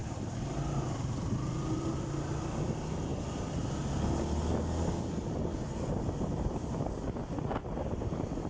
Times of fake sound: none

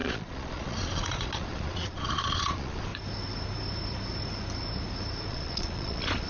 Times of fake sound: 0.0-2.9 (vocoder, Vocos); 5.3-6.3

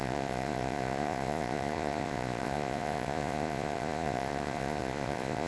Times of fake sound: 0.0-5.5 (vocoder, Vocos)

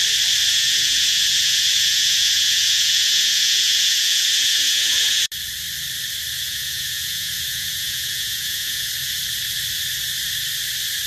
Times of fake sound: 0.5-5.3 (vocoder, Vocos); 6.4-8.9

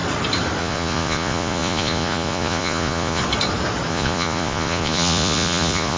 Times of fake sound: 0.6-3.2 (vocoder, Vocos); 3.9-6.0